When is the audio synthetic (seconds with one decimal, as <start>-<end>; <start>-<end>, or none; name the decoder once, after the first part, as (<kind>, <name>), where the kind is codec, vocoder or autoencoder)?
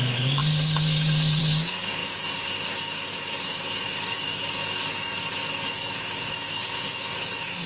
0.0-7.7 (codec, DAC)